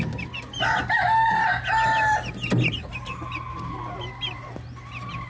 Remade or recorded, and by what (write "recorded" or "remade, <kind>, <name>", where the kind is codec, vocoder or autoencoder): recorded